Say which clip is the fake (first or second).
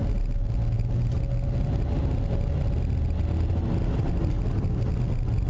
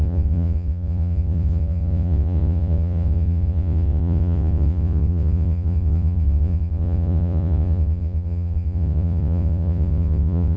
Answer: second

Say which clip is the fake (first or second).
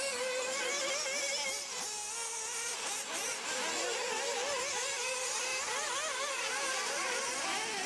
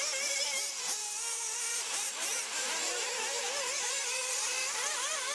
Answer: second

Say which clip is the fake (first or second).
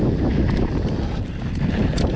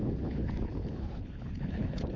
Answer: second